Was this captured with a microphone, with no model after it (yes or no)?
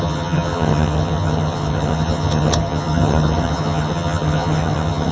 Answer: no